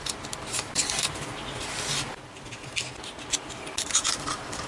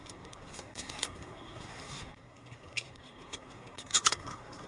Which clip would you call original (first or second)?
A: first